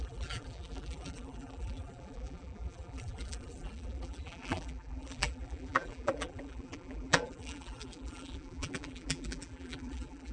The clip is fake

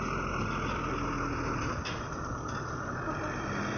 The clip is real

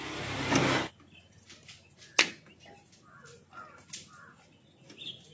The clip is real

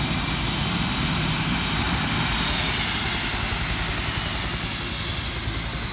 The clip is real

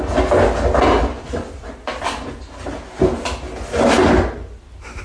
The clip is real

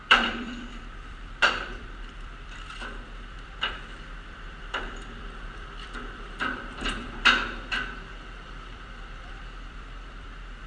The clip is fake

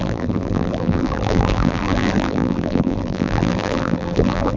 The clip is fake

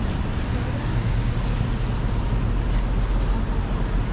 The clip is real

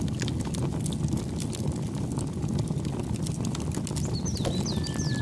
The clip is real